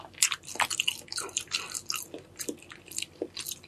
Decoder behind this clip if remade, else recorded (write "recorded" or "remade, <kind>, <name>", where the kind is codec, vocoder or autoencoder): recorded